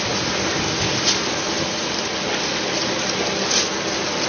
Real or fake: real